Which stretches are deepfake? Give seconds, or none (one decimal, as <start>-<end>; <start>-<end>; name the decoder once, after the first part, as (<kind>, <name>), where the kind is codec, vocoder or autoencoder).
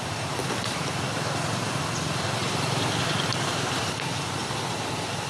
0.0-0.4 (vocoder, BigVGAN v2); 3.0-4.4